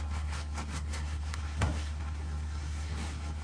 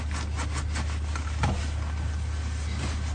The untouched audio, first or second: second